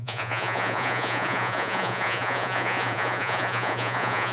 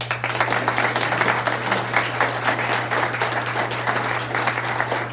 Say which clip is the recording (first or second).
second